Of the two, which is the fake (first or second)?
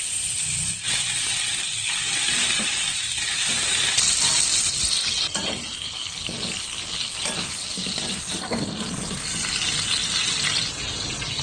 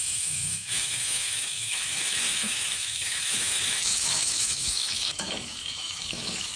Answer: second